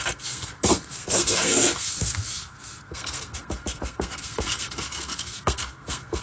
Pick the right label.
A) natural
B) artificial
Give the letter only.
B